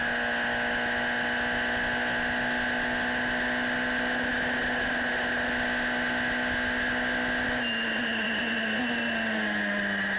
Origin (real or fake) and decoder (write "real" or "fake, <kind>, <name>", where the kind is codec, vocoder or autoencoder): real